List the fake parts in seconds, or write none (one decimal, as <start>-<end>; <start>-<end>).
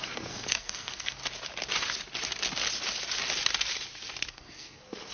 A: 0.0-1.2; 4.3-5.1